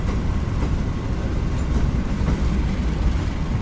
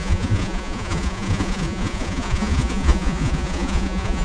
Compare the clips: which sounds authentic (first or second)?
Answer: first